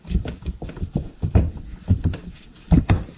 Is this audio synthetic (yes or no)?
yes